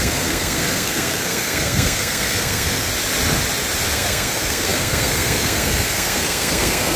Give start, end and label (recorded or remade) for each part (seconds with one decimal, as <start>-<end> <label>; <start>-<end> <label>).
0.0-2.9 remade; 2.9-3.9 recorded; 3.9-7.0 remade